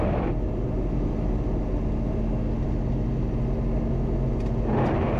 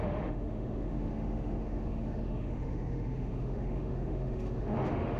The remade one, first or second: second